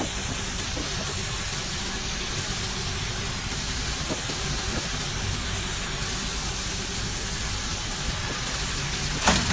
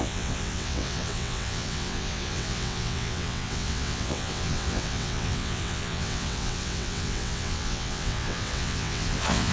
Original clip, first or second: first